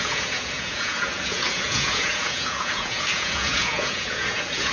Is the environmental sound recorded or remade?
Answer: remade